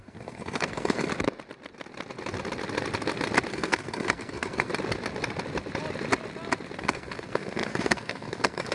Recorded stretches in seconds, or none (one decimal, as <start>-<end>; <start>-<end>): 1.1-3.5; 4.7-6.8